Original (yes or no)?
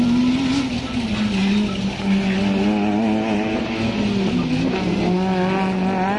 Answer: yes